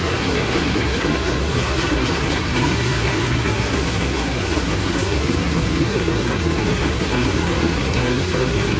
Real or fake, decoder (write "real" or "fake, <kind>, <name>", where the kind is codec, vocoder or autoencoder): fake, codec, SNAC